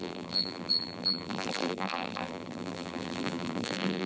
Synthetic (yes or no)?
yes